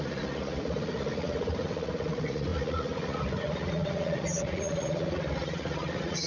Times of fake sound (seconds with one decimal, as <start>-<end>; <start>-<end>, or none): 0.0-6.3